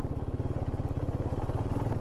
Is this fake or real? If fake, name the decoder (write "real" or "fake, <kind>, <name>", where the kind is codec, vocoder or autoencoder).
real